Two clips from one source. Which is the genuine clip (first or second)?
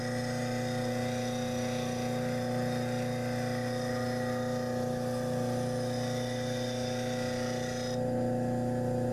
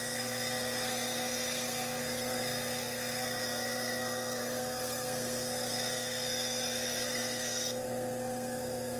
first